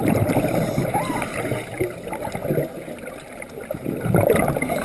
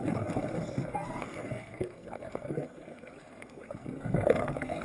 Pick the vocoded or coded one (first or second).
second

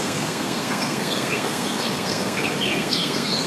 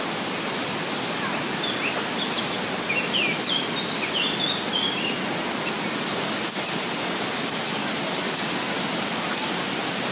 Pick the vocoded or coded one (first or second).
first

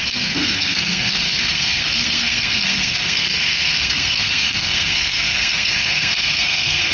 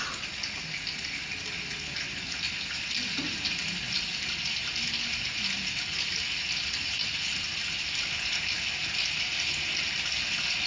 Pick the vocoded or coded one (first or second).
first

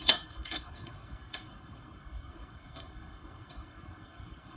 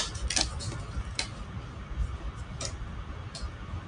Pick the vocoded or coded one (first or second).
first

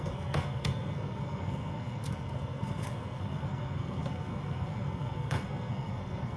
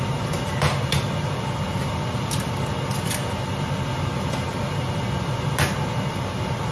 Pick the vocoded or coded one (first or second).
first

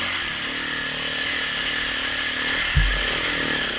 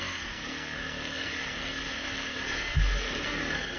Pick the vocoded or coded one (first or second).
second